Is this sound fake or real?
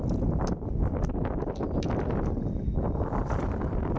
real